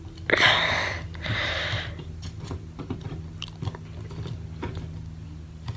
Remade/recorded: recorded